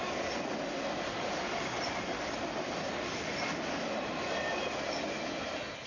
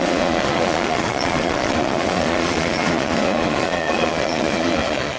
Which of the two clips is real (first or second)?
first